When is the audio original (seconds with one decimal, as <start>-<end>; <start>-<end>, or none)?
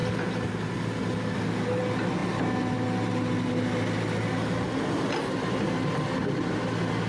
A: 0.0-7.1